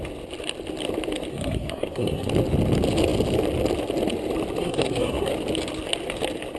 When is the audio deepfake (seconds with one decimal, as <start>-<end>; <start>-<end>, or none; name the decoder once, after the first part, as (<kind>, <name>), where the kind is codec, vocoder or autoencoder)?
1.3-2.3 (codec, SNAC); 4.6-5.3